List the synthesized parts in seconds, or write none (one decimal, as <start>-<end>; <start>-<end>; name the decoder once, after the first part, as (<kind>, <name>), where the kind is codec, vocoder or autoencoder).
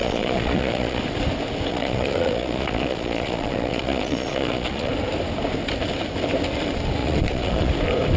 0.0-1.0 (vocoder, Vocos); 1.7-4.9; 7.0-7.7